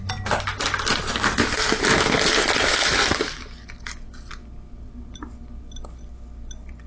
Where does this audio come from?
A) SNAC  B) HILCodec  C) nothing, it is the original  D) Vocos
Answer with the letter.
C